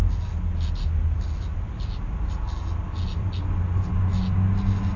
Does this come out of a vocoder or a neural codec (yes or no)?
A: no